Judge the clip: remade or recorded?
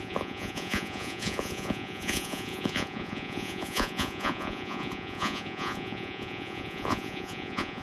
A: remade